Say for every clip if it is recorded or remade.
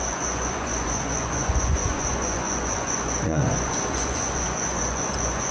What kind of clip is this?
remade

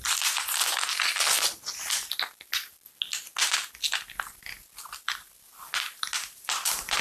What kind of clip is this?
recorded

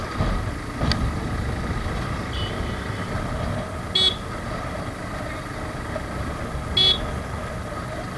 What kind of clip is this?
recorded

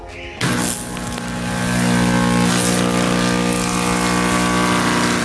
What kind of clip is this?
recorded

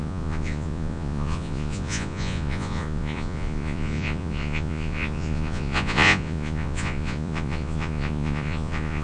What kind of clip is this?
remade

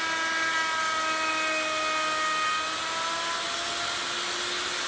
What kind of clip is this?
recorded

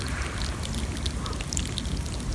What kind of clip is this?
recorded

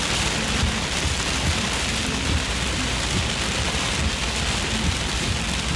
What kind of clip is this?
remade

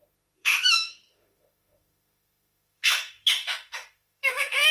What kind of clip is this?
remade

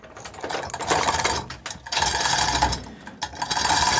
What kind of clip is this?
recorded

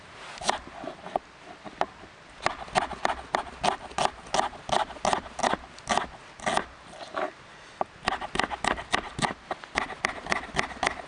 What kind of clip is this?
recorded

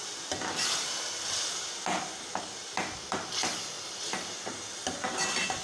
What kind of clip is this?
recorded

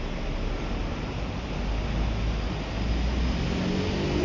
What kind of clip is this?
recorded